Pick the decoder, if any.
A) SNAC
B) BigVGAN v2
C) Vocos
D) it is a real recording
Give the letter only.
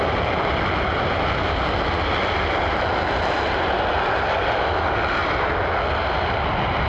D